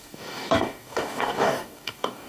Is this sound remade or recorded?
remade